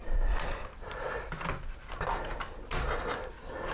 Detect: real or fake real